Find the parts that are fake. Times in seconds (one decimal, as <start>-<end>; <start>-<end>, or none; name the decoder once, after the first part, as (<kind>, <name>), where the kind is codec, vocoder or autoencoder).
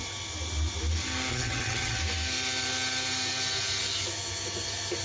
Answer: 1.3-2.0 (vocoder, HiFi-GAN)